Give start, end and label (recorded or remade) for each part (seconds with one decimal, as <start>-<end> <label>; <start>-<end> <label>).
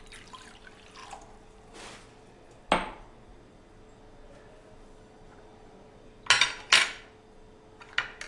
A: 0.0-8.3 recorded